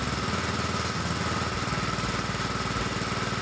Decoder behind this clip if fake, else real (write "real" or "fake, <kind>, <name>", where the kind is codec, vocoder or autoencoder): real